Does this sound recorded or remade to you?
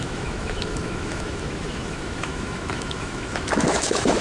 remade